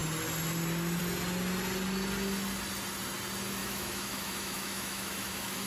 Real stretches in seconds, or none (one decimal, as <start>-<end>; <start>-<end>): 0.0-3.6